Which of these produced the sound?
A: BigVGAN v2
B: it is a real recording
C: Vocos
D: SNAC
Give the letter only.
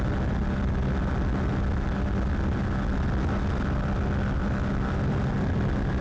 B